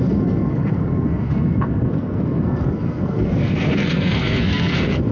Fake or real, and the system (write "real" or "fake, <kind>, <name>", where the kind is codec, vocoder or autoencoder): fake, codec, SNAC